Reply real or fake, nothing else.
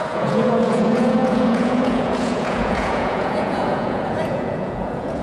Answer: fake